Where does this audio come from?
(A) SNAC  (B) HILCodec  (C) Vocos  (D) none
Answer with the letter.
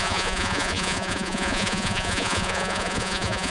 C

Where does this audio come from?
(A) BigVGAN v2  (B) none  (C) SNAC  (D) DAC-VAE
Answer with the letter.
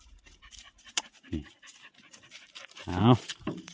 A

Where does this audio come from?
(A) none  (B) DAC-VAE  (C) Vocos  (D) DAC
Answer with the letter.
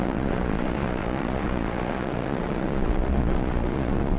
C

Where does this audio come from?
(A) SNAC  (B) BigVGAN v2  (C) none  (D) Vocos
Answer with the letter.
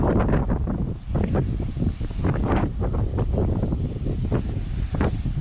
C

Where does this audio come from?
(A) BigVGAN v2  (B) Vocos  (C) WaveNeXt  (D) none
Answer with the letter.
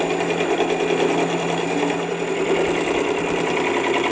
D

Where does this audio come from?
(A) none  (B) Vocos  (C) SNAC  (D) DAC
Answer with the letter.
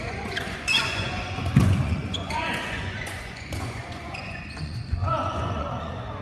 B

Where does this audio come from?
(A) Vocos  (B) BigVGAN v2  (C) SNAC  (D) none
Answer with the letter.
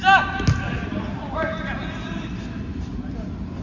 D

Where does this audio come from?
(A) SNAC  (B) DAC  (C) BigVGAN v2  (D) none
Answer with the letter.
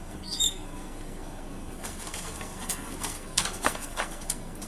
A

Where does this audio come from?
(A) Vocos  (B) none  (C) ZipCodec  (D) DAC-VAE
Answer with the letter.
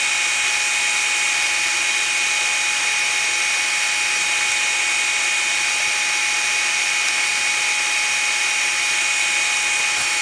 B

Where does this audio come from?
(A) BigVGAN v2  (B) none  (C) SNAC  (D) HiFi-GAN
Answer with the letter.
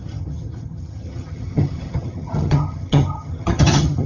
D